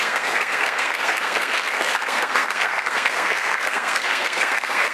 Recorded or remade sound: remade